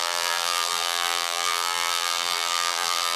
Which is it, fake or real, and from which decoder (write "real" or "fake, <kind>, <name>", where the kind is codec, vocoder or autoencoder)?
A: fake, vocoder, BigVGAN v2